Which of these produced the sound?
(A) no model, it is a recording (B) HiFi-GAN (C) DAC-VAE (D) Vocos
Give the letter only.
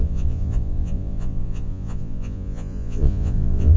D